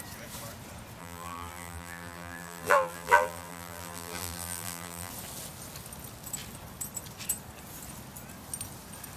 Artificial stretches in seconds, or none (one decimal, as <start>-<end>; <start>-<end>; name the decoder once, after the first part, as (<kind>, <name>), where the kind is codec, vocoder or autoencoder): 1.0-5.1 (vocoder, BigVGAN v2)